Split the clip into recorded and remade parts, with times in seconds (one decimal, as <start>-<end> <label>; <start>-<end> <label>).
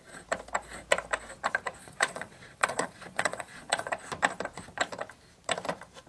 0.0-1.8 recorded; 1.8-3.9 remade; 3.9-6.1 recorded